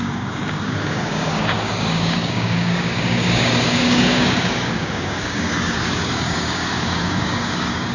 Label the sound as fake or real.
fake